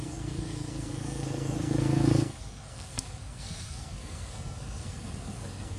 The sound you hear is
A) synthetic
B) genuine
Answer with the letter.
A